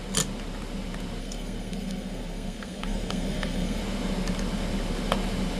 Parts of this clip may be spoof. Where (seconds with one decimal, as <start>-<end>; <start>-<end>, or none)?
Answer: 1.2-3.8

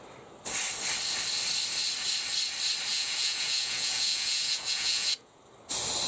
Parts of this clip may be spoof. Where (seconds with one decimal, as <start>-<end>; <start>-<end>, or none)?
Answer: 2.9-5.4

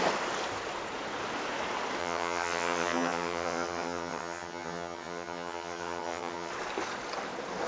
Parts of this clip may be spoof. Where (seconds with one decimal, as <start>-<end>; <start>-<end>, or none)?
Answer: 2.0-6.5